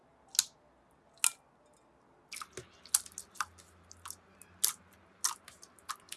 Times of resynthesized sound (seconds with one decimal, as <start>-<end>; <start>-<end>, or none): none